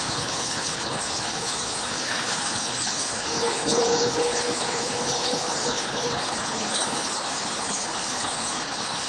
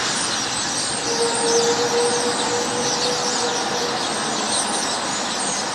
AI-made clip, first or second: first